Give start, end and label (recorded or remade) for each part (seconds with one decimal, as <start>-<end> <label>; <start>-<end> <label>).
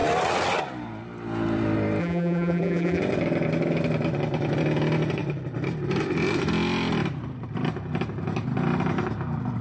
0.0-2.0 recorded; 2.0-3.0 remade; 3.0-9.6 recorded